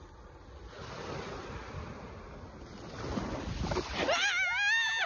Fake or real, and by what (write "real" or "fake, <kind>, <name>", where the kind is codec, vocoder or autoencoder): real